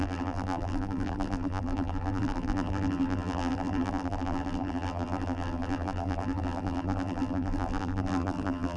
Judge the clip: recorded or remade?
remade